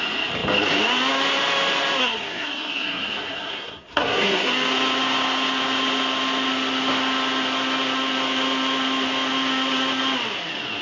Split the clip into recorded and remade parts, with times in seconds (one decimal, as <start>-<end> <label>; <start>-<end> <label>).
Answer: 0.0-2.0 recorded; 2.0-4.5 remade; 4.5-10.8 recorded